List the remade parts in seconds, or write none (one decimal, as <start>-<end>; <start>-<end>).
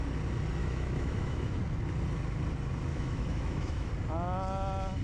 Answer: 0.6-1.6; 2.9-3.9